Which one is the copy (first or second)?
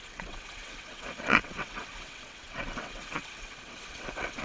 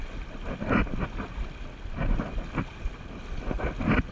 first